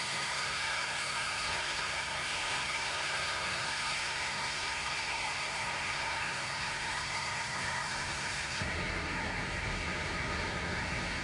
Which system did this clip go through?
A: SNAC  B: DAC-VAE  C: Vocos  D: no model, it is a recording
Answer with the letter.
A